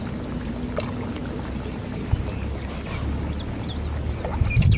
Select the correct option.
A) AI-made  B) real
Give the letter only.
B